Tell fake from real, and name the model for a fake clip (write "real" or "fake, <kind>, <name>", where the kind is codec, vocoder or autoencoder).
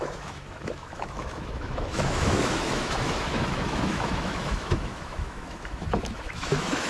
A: fake, autoencoder, DAC-VAE